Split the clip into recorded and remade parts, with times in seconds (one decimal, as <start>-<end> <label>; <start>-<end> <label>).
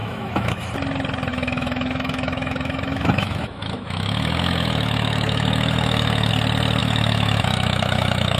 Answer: 0.0-0.7 remade; 0.7-1.3 recorded; 1.3-6.3 remade; 6.3-6.8 recorded; 6.8-8.4 remade